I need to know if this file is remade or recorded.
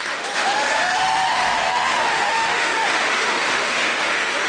remade